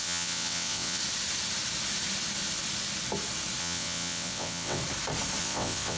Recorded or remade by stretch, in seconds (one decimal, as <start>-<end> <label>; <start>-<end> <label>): 0.0-1.0 remade; 1.0-3.6 recorded; 3.6-4.8 remade; 4.8-5.4 recorded; 5.4-6.0 remade